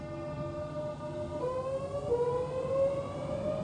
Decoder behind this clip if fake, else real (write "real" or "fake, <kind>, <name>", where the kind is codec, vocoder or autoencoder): real